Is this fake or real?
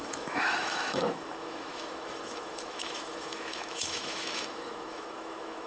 fake